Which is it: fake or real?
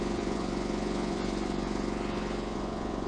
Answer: fake